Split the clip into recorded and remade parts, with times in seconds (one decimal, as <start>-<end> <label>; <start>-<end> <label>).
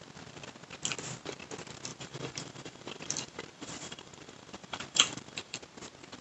0.0-1.9 recorded; 1.9-5.6 remade; 5.6-6.2 recorded